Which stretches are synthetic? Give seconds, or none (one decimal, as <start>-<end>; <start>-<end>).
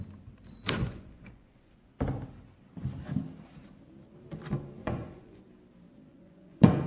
0.8-1.9; 4.8-5.4; 6.1-6.9